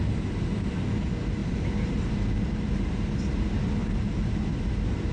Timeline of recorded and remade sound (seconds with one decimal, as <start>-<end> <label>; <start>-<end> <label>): 0.0-1.4 recorded; 1.4-2.5 remade; 2.5-3.8 recorded; 3.8-5.1 remade